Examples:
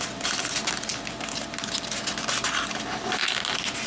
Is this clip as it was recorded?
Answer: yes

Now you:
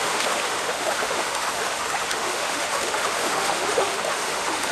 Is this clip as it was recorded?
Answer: no